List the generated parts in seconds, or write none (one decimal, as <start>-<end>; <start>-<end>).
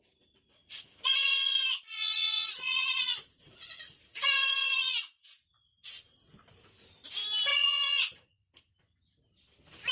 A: 0.5-5.4; 7.5-8.8